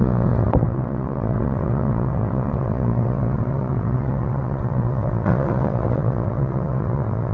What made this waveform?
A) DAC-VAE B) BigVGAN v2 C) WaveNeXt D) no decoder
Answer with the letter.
C